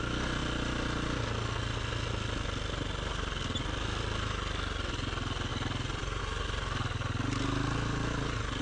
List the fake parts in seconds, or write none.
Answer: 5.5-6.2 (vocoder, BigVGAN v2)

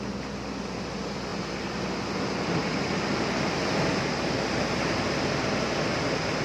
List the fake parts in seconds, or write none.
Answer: none

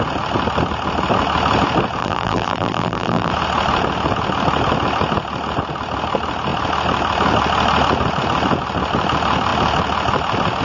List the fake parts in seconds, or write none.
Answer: 2.0-3.3 (vocoder, BigVGAN v2)

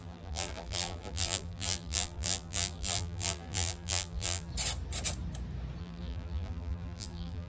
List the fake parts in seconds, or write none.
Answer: 0.0-4.5 (vocoder, BigVGAN v2); 5.8-7.5

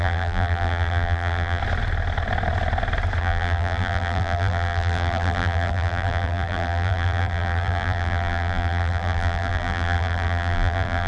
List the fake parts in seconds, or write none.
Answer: 0.0-1.6 (vocoder, BigVGAN v2); 3.2-11.1

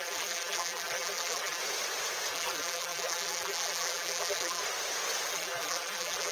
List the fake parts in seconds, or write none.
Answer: 0.0-1.6 (vocoder, BigVGAN v2); 2.3-4.6; 5.3-6.3

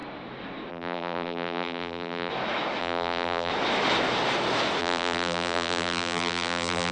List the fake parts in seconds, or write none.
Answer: 0.7-2.3 (vocoder, BigVGAN v2); 2.8-3.5; 4.8-6.9